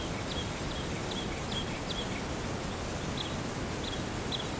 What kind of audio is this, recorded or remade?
recorded